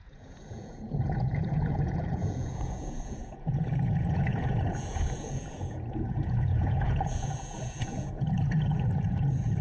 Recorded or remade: remade